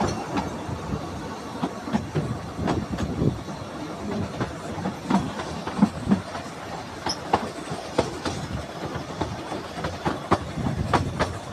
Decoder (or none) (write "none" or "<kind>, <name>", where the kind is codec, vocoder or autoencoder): none